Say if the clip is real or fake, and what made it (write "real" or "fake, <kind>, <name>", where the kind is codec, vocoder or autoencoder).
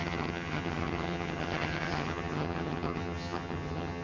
fake, vocoder, HiFi-GAN